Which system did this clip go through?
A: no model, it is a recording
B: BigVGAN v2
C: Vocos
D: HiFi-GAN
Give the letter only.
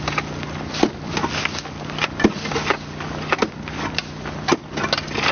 A